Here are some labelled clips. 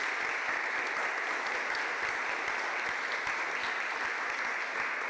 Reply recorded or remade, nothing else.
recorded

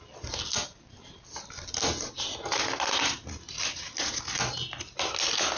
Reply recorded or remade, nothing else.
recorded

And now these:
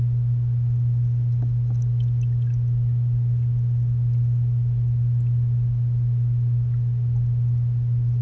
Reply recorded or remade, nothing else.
recorded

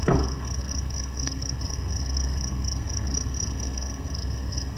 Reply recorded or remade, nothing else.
remade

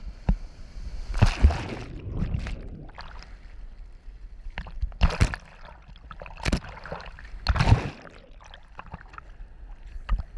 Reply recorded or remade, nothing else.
recorded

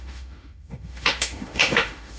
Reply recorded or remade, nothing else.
remade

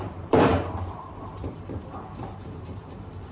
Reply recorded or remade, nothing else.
remade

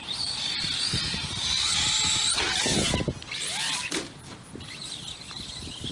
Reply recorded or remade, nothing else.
recorded